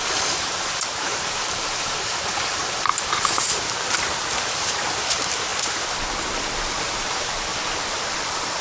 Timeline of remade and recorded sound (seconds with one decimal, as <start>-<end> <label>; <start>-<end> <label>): 0.0-5.5 remade; 5.5-6.7 recorded; 6.7-7.5 remade; 7.5-8.2 recorded; 8.2-8.6 remade